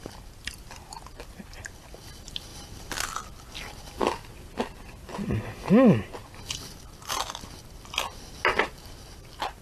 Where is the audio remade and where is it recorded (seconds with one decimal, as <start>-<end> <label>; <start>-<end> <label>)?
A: 0.0-9.6 recorded